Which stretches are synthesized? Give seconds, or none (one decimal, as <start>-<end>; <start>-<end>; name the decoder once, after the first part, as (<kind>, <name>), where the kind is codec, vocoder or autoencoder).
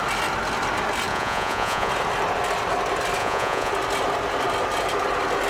1.1-1.9 (vocoder, Vocos); 3.2-3.7